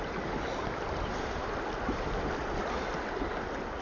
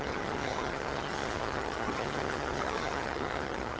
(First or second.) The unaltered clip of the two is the first